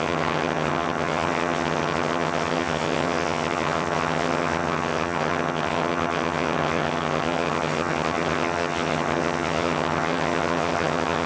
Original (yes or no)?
no